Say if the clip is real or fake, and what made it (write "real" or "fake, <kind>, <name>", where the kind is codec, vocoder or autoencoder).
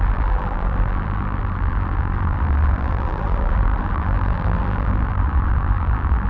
fake, vocoder, BigVGAN v2